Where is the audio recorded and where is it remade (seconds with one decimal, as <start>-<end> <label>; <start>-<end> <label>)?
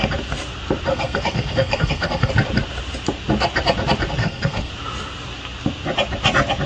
0.0-0.9 recorded; 0.9-2.3 remade; 2.3-4.2 recorded; 4.2-4.7 remade; 4.7-6.7 recorded